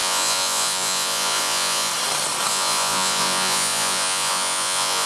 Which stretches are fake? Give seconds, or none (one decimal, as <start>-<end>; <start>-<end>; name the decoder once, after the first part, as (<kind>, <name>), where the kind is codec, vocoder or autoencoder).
0.0-1.9 (vocoder, Vocos); 2.5-5.1